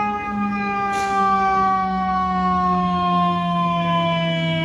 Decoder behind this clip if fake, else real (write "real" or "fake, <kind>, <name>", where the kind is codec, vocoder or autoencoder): fake, codec, DAC